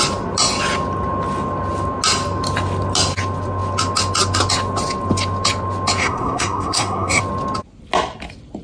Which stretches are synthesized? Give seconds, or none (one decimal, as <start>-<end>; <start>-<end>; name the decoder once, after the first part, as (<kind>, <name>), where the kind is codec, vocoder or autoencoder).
6.0-7.2 (codec, SNAC)